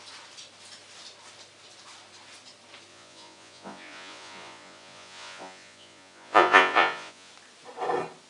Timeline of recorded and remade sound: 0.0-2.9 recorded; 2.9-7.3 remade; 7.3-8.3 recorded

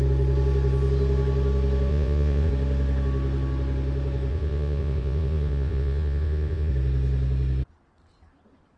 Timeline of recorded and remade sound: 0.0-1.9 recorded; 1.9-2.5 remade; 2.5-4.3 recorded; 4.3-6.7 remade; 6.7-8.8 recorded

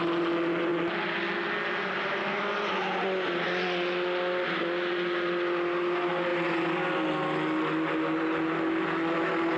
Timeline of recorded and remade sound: 0.0-9.6 recorded

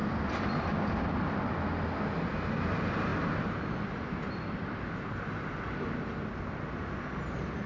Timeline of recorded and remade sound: 0.0-7.7 recorded